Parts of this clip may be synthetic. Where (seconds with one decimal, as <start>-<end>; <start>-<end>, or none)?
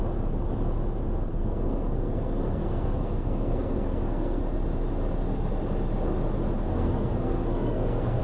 1.3-4.4; 6.7-8.2